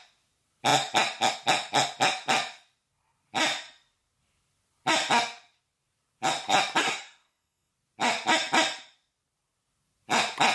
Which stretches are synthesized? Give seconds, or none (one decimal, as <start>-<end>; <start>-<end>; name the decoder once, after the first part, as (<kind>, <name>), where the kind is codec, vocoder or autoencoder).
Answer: 6.8-7.7 (codec, SNAC)